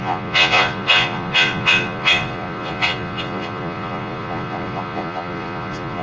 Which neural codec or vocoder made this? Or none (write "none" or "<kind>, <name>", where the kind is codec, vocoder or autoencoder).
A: vocoder, Vocos